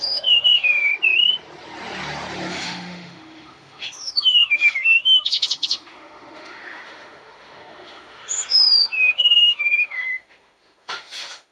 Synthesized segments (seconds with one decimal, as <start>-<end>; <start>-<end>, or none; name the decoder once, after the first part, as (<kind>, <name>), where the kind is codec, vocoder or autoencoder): 0.0-0.9 (autoencoder, DAC-VAE); 2.5-11.5